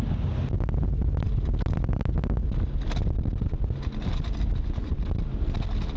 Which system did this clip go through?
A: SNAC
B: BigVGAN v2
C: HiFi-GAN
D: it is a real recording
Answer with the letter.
D